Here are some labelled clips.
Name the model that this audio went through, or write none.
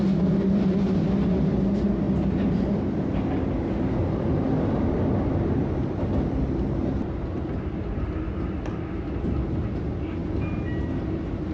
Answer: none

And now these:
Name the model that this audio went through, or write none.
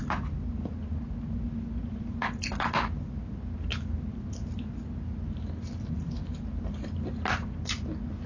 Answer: none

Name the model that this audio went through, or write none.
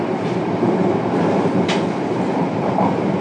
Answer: vocoder, BigVGAN v2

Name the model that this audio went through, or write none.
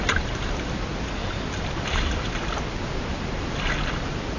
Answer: none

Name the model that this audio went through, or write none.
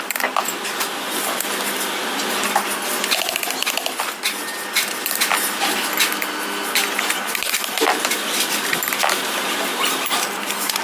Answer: none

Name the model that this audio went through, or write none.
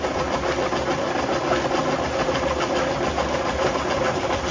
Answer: none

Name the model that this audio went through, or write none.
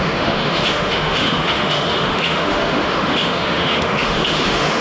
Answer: autoencoder, DAC-VAE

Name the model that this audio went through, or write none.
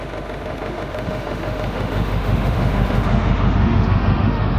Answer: autoencoder, DAC-VAE